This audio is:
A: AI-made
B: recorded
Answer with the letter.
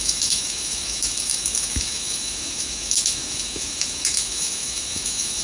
A